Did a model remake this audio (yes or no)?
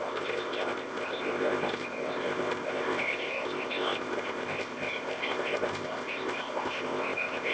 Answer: yes